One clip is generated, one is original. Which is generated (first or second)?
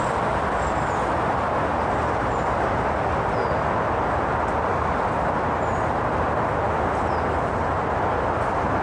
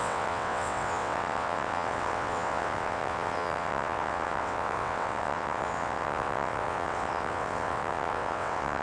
second